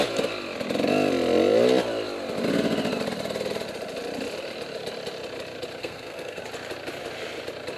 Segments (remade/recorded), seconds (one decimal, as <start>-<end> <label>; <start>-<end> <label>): 0.0-5.8 recorded; 5.8-6.4 remade; 6.4-7.8 recorded